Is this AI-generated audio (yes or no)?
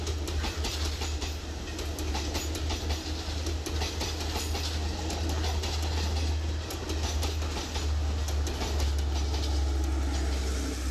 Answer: no